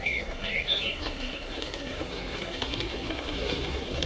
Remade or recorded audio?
remade